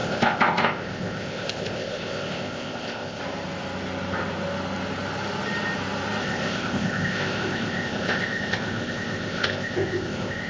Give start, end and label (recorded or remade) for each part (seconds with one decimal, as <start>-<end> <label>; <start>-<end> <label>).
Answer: 0.0-3.2 remade; 3.2-6.2 recorded; 6.2-10.5 remade